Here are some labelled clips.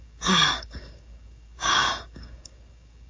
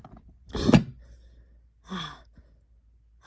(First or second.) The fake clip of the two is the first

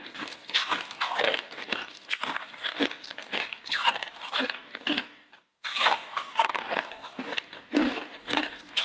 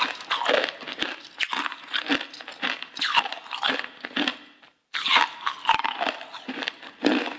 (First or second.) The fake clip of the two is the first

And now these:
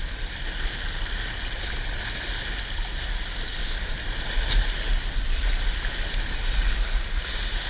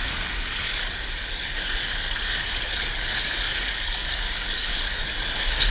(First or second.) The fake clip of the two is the second